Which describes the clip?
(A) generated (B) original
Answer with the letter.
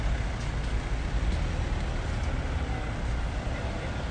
B